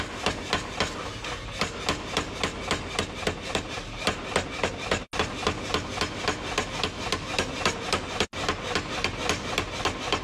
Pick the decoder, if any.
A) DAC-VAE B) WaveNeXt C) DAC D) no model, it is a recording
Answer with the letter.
D